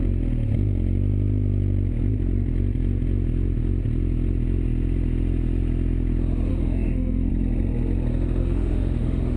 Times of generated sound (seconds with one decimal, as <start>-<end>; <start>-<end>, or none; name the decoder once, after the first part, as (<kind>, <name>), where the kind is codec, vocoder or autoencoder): 6.5-7.3 (autoencoder, DAC-VAE); 8.4-9.4